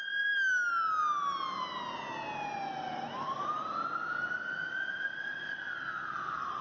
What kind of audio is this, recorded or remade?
recorded